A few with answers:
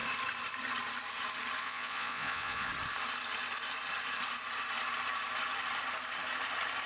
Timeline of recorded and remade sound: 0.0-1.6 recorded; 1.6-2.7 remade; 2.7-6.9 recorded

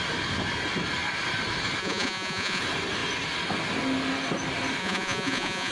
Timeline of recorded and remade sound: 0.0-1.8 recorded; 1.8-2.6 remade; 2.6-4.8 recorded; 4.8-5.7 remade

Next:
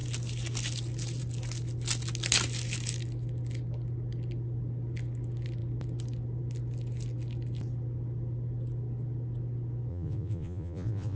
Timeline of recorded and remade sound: 0.0-9.9 recorded; 9.9-11.2 remade

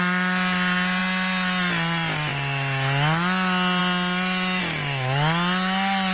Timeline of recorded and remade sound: 0.0-6.1 recorded